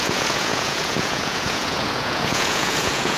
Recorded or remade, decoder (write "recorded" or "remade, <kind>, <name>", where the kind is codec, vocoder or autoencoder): remade, vocoder, Vocos